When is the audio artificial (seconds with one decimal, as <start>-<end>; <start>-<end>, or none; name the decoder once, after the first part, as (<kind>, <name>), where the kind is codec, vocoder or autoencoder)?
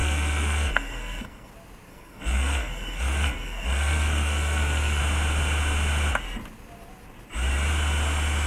0.0-1.5 (codec, SNAC); 1.9-5.0